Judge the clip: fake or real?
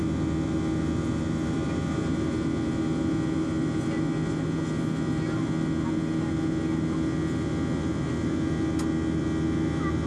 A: real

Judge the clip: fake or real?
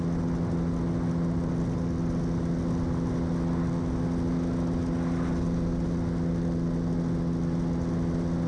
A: real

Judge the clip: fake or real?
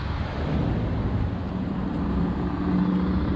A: real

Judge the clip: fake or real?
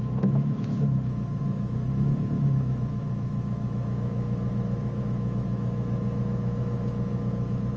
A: fake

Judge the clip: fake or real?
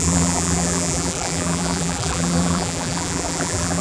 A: fake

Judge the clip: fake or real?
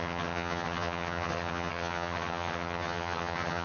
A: fake